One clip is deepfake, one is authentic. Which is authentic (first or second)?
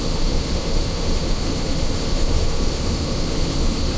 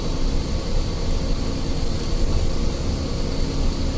second